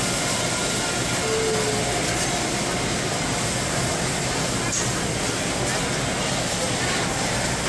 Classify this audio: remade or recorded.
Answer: recorded